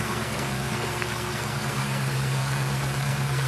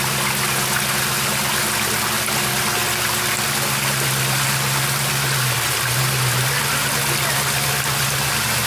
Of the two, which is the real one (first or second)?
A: second